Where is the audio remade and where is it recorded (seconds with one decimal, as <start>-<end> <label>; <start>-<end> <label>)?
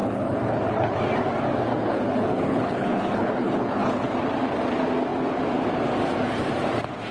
0.0-1.0 remade; 1.0-1.7 recorded; 1.7-4.1 remade; 4.1-7.1 recorded